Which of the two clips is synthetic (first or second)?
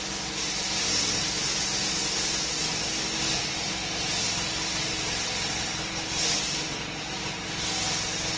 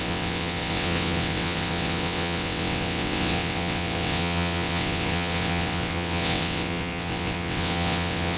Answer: second